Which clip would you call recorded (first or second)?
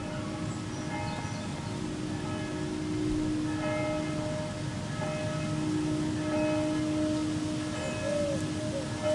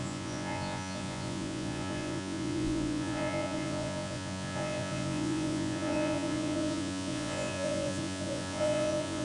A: first